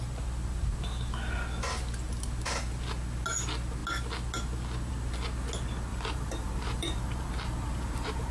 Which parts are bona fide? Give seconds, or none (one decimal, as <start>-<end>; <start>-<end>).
0.0-5.9